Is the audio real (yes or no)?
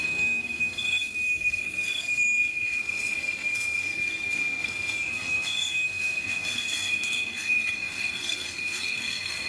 no